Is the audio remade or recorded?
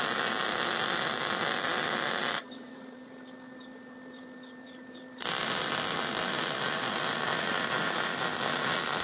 recorded